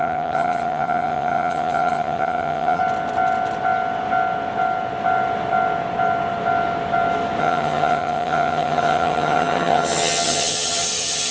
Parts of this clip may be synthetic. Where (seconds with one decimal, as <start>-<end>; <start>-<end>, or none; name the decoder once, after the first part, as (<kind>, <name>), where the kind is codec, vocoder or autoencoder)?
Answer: 0.0-2.8 (vocoder, HiFi-GAN); 7.4-11.3